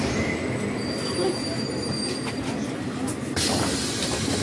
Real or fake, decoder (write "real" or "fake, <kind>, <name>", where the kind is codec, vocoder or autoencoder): real